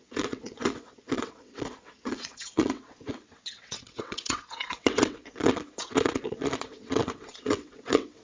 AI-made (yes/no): yes